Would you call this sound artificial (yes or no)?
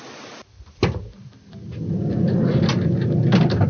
no